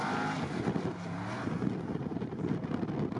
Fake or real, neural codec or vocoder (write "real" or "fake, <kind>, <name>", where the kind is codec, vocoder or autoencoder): real